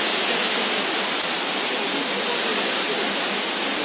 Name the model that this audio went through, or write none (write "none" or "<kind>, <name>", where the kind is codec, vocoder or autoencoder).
none